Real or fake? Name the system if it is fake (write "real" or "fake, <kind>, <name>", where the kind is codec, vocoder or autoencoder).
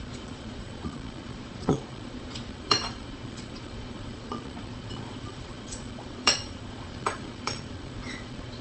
fake, vocoder, Vocos